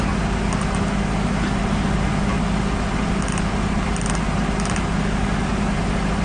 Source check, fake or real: real